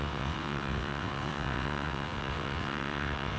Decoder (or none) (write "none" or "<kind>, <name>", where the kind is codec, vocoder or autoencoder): vocoder, WaveNeXt